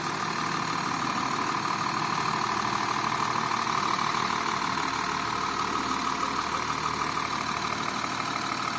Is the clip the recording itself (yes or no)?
yes